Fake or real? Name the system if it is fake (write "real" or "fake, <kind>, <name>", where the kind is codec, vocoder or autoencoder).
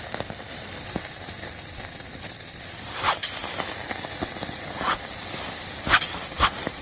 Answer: real